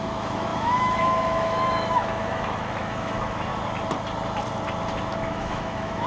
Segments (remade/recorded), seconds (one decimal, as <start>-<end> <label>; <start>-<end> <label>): 0.0-3.5 remade; 3.5-5.1 recorded; 5.1-6.1 remade